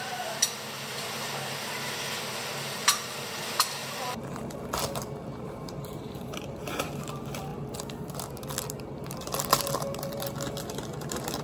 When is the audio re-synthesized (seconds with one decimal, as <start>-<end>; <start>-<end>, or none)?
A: 2.8-3.4; 3.8-4.6; 5.3-7.0